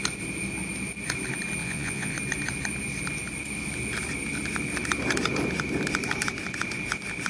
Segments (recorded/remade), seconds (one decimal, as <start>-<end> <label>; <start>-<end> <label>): 0.0-1.6 recorded; 1.6-2.1 remade; 2.1-7.3 recorded